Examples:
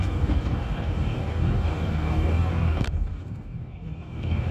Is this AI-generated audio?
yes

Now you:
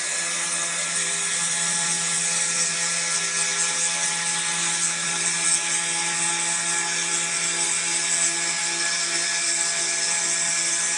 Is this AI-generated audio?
no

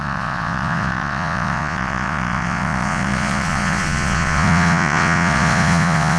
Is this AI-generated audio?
yes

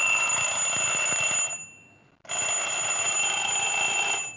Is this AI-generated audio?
no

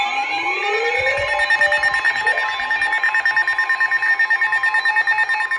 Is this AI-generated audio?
no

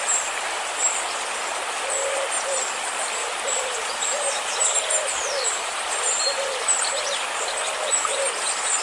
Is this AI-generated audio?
no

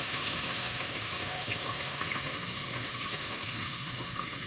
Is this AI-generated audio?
yes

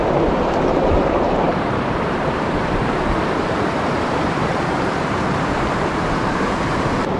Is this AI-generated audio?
yes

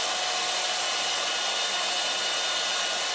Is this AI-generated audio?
no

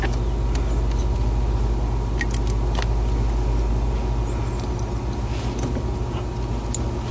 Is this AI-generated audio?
no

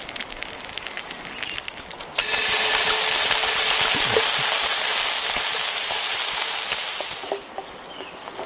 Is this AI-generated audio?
no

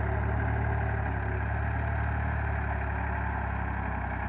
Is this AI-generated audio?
no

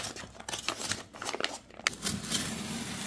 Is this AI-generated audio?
no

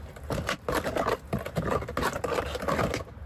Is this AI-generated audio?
no